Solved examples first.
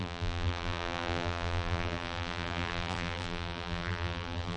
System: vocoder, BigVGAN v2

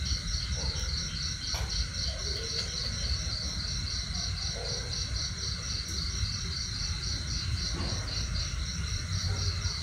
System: none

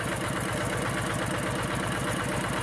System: none